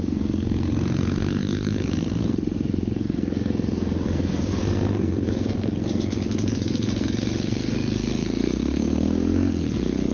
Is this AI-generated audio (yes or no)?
yes